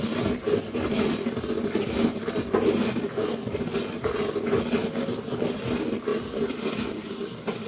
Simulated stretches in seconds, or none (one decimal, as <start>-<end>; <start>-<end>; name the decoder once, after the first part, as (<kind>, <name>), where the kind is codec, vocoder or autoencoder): none